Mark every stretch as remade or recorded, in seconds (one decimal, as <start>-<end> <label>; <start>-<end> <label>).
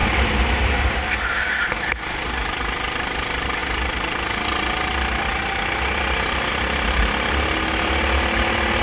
0.0-8.8 recorded